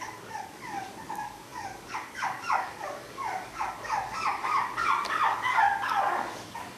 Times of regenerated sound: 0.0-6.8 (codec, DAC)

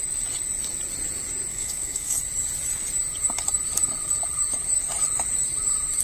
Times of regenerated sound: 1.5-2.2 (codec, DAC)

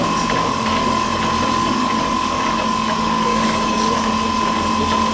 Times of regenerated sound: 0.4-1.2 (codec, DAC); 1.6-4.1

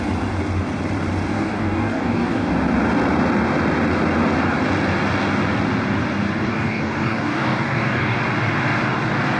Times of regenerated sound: 1.3-2.5 (codec, DAC); 6.4-8.2